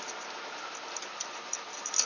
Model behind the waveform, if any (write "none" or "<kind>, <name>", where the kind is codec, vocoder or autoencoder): none